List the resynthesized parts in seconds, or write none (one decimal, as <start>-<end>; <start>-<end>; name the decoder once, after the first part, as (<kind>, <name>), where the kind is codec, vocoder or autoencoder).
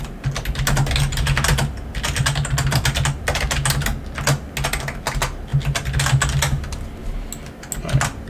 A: none